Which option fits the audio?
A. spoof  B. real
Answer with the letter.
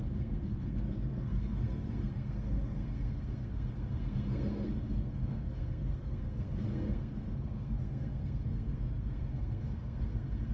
A